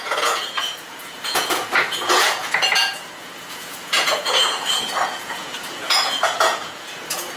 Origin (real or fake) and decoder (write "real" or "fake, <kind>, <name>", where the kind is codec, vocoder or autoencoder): fake, vocoder, Vocos